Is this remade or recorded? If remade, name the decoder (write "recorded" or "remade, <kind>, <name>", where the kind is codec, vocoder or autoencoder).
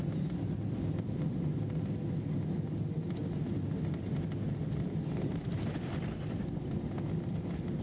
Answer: recorded